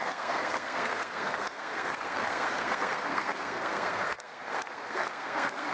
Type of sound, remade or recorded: remade